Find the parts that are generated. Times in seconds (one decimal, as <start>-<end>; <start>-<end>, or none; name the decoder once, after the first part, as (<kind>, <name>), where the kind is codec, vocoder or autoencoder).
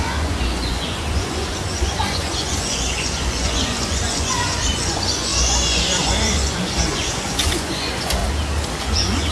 0.0-8.2 (vocoder, Vocos); 8.8-9.3